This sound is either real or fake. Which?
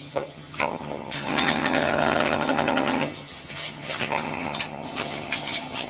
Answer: fake